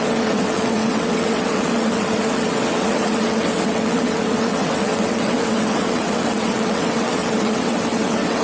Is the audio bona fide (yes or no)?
no